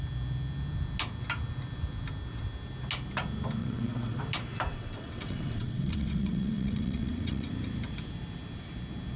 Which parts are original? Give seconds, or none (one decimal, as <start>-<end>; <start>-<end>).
0.0-3.6; 4.2-4.7; 7.5-9.2